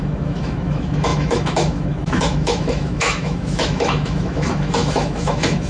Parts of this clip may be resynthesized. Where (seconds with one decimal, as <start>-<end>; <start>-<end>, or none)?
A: 0.0-5.7

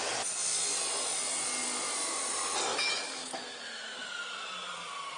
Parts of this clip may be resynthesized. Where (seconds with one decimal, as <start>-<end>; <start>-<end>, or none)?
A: 2.7-4.2